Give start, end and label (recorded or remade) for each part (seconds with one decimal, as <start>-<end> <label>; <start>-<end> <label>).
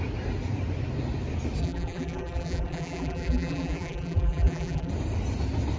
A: 0.0-1.6 recorded; 1.6-4.9 remade; 4.9-5.8 recorded